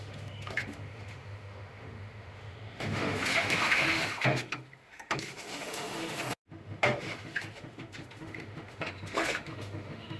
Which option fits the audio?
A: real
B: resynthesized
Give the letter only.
B